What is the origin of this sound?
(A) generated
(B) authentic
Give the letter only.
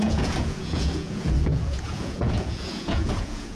A